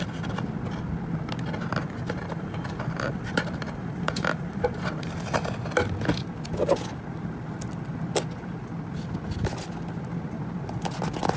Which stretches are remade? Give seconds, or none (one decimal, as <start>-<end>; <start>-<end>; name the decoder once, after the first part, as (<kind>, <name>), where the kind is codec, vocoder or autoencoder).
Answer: 1.8-5.5 (vocoder, BigVGAN v2)